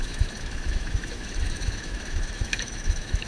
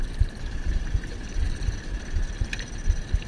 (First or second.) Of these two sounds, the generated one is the first